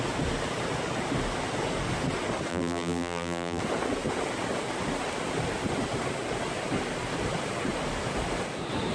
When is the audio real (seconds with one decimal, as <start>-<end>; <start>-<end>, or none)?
0.0-2.5; 3.6-8.9